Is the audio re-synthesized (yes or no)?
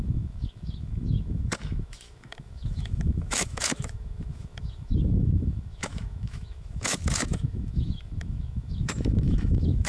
yes